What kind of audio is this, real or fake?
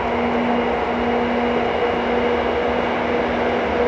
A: real